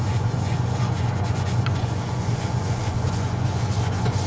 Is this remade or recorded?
remade